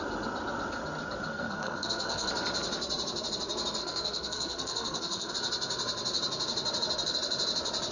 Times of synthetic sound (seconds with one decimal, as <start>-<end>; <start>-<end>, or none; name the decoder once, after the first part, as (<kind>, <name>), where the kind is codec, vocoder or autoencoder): 1.3-2.3 (codec, SNAC); 3.8-5.3